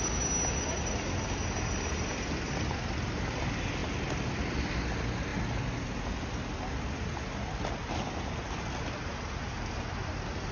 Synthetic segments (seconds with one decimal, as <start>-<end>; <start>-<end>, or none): none